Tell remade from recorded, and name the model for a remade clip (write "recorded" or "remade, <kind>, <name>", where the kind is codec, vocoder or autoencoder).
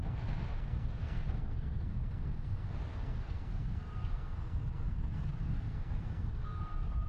remade, codec, SNAC